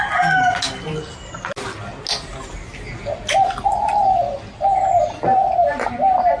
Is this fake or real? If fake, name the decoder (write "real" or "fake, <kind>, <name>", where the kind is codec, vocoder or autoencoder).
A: real